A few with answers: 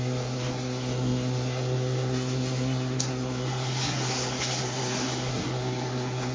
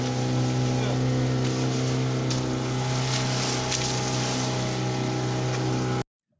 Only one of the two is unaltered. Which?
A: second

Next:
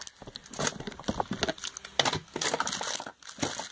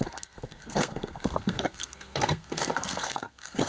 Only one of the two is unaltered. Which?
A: first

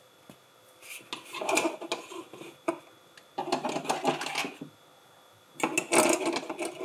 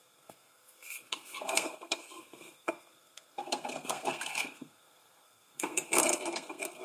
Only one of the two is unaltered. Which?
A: first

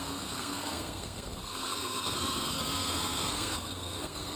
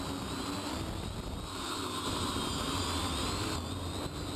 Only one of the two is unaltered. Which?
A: second